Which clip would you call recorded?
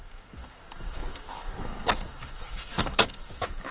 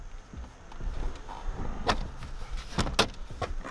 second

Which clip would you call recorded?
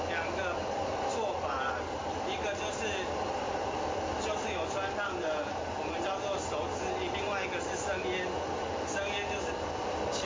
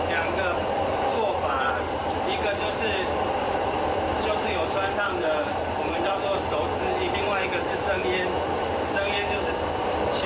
first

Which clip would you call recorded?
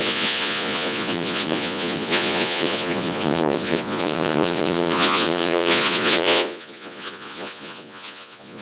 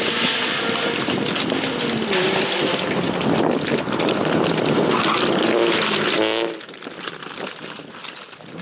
second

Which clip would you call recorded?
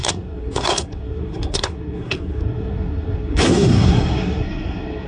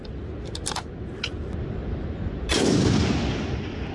second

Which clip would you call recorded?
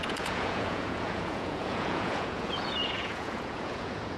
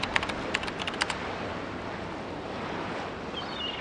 second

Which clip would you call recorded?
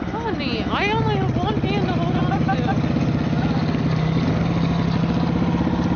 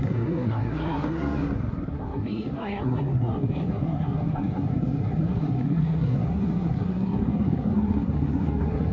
first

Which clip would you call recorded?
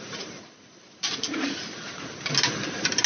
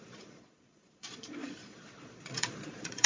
first